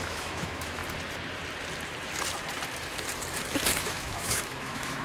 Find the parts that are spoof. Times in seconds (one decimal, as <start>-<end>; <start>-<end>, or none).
0.0-0.8; 3.8-5.0